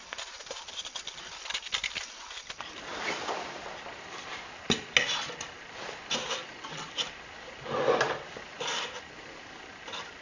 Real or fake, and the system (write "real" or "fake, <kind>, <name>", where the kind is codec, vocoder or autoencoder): real